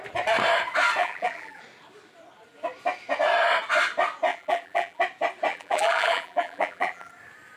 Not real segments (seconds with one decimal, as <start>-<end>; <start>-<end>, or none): 1.0-1.6; 4.3-5.0; 5.5-7.1

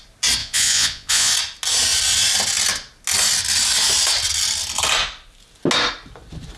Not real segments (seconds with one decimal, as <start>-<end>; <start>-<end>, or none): 0.4-1.3

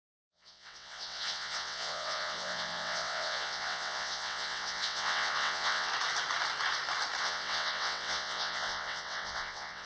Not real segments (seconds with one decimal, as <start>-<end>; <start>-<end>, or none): 0.0-5.9; 7.2-9.9

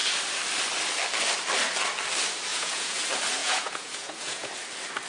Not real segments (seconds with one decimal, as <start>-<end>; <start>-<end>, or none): 2.5-3.0; 3.4-4.5

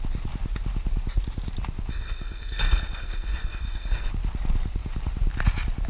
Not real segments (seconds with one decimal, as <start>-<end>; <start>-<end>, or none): 1.9-4.1

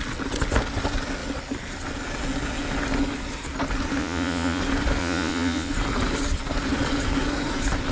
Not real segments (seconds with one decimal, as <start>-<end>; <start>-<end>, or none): 4.0-4.6; 5.0-5.7